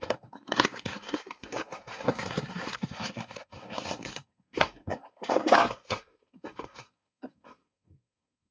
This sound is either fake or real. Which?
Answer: fake